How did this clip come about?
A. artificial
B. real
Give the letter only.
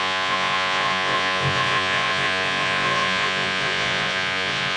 A